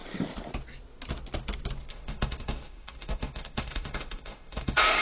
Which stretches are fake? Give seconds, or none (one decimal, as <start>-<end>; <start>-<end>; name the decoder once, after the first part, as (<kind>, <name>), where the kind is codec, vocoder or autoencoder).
1.9-5.0 (autoencoder, DAC-VAE)